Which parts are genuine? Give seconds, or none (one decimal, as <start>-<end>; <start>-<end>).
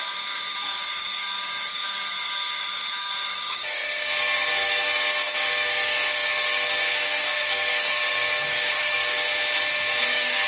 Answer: 9.3-10.0